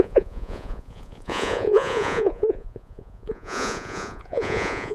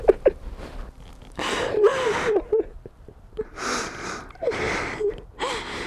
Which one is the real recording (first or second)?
second